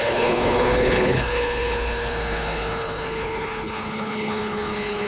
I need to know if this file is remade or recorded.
remade